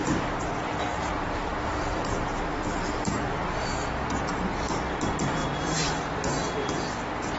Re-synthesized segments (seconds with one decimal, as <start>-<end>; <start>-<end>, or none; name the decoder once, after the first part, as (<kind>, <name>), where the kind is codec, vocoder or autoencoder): 0.9-3.7 (vocoder, BigVGAN v2); 5.4-6.1